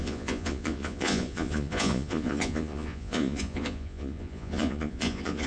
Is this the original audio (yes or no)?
no